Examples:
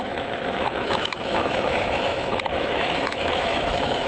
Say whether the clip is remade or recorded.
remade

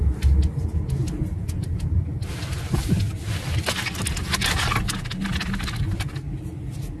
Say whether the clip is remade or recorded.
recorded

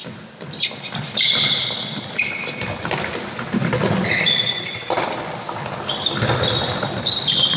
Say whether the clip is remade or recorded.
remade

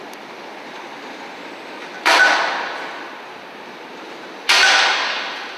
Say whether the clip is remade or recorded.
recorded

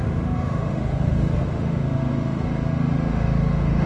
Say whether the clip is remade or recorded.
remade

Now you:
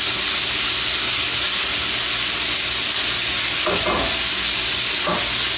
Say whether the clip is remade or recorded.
recorded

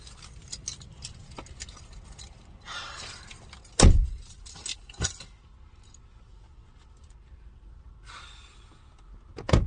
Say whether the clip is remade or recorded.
recorded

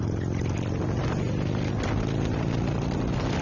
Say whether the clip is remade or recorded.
recorded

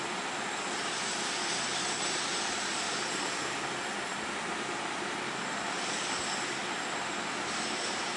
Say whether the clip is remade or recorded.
recorded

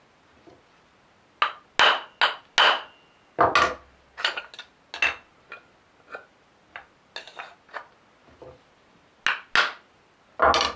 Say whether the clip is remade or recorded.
recorded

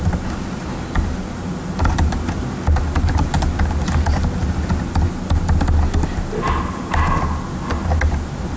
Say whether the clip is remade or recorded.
recorded